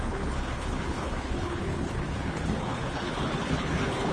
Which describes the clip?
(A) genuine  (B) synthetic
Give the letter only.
B